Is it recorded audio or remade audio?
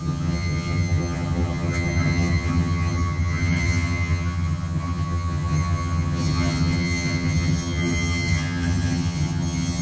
remade